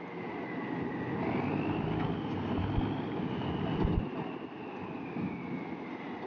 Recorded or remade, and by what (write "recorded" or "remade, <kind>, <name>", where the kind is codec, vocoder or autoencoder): recorded